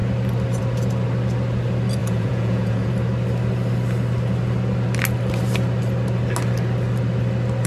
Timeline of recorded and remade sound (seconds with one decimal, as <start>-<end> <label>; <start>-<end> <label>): 0.0-2.0 recorded; 2.0-2.9 remade; 2.9-7.7 recorded